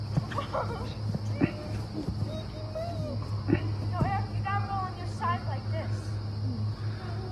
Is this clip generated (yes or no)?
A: no